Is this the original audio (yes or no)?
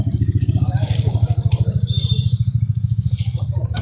no